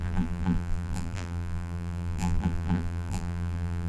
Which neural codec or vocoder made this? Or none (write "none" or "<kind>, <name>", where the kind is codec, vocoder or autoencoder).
vocoder, BigVGAN v2